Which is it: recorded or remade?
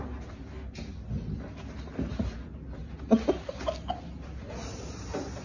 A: recorded